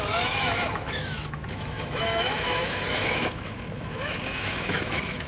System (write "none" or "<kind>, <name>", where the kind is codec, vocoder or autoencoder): autoencoder, DAC-VAE